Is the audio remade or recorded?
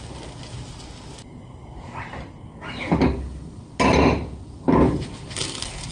recorded